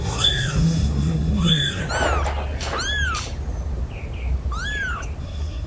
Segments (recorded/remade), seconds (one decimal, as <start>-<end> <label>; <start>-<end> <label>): 0.0-1.8 remade; 1.8-5.2 recorded; 5.2-5.7 remade